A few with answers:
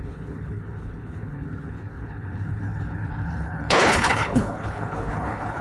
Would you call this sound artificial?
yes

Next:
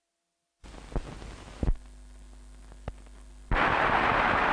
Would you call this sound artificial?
no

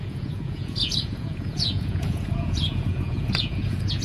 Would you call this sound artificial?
yes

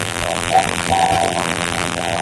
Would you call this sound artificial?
yes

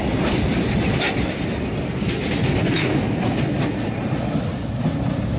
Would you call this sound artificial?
no